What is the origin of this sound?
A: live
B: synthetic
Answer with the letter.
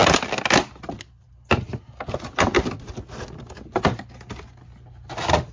A